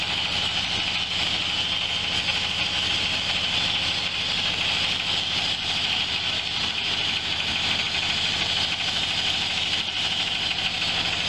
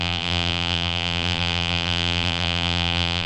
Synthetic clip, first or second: second